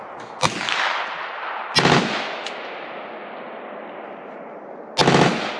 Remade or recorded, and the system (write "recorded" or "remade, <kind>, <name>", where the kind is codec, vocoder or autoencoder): recorded